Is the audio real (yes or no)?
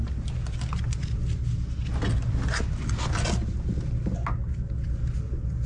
yes